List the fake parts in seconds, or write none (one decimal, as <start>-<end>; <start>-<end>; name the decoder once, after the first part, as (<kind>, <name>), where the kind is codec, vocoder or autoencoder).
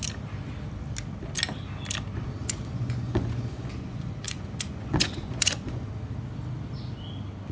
2.4-5.9 (vocoder, Vocos)